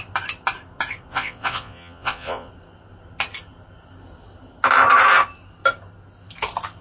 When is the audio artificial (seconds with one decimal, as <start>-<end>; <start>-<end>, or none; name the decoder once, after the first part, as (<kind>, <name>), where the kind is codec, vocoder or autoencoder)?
1.1-2.5 (vocoder, Vocos)